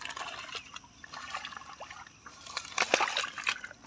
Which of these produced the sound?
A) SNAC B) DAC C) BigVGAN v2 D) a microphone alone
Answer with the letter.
D